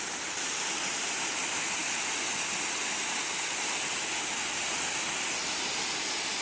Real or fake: real